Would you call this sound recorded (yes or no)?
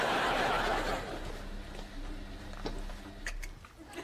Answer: yes